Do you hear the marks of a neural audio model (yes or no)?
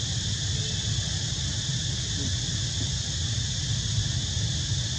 no